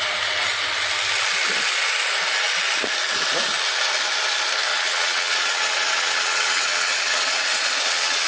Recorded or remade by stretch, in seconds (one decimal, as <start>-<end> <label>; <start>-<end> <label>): 0.0-4.7 recorded; 4.7-8.3 remade